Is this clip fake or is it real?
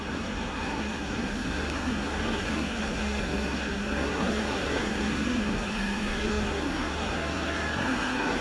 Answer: fake